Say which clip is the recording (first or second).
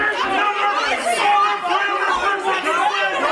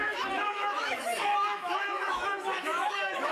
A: first